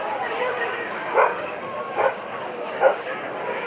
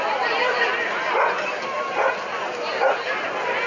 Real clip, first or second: second